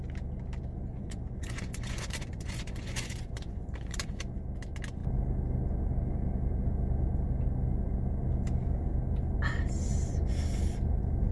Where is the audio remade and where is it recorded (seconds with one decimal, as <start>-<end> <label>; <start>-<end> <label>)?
0.0-0.9 recorded; 0.9-4.2 remade; 4.2-11.3 recorded